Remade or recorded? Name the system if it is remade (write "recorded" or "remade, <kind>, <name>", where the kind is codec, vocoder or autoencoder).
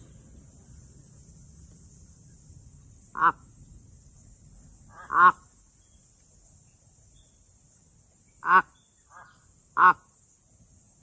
recorded